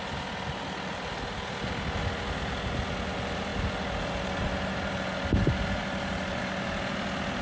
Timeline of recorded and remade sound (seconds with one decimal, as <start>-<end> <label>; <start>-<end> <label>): 0.0-7.4 recorded